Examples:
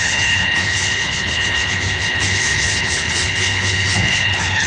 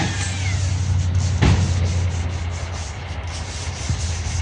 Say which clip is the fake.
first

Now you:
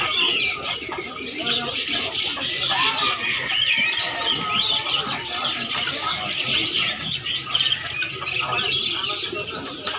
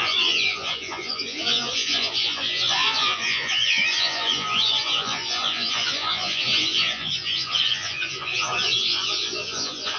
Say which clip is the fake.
second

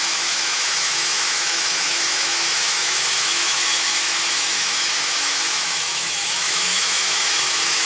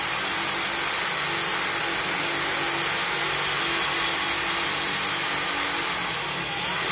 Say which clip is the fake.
first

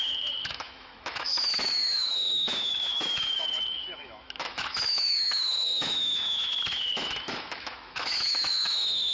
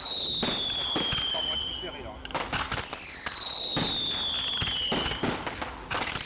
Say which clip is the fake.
first